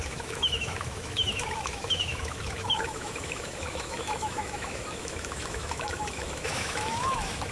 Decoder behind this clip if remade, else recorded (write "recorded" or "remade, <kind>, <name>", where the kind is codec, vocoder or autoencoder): remade, autoencoder, DAC-VAE